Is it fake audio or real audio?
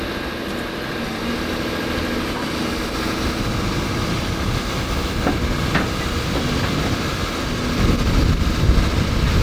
real